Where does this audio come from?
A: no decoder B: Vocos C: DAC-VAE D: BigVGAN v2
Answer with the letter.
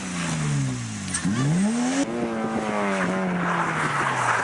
A